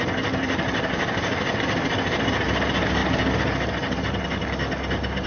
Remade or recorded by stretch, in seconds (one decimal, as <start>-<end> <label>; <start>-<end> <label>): 0.0-5.3 recorded